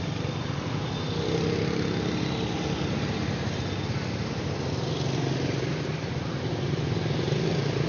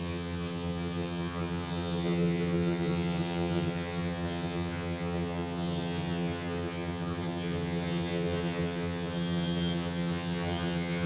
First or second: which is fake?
second